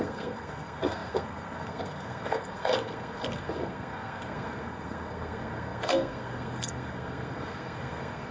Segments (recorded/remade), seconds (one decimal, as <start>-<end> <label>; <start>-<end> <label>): 0.0-8.3 remade